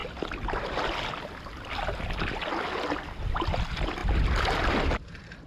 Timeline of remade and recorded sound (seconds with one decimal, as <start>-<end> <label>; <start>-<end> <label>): 0.0-3.3 recorded; 3.3-4.0 remade; 4.0-4.6 recorded; 4.6-5.5 remade